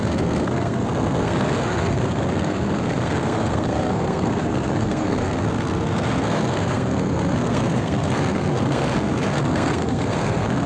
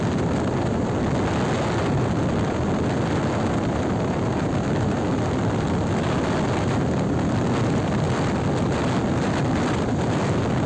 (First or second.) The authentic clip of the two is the second